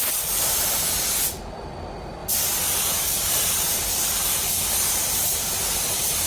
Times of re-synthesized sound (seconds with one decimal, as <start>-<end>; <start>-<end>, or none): 2.2-6.3